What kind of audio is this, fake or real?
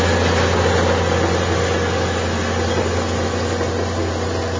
real